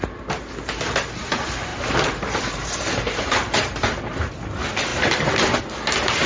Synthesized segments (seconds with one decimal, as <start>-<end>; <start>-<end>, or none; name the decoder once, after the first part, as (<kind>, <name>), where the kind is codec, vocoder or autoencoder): 1.7-4.3 (vocoder, BigVGAN v2); 4.9-5.6